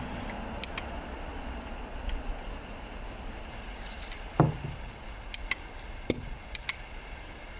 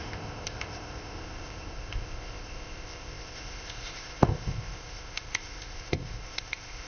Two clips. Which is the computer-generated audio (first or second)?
second